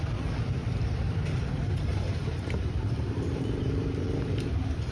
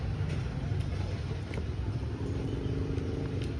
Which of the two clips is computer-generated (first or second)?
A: first